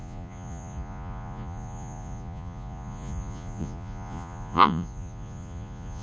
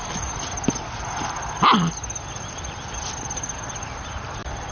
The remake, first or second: first